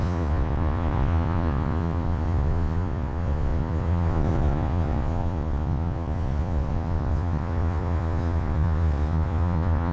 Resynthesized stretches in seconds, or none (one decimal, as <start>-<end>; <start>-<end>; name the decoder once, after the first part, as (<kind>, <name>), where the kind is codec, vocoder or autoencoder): 0.0-9.9 (vocoder, Vocos)